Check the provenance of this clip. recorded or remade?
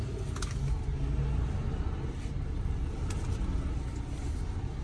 recorded